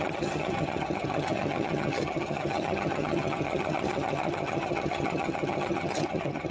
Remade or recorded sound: remade